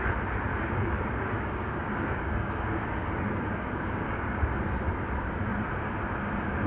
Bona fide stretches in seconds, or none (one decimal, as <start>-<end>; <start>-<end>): 0.0-0.5; 4.5-6.7